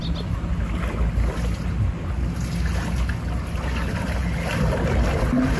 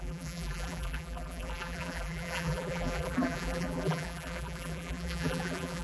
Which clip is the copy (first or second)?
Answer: second